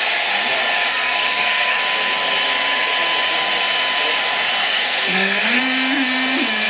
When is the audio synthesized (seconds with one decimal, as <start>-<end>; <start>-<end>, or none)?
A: 0.9-1.8; 4.6-5.6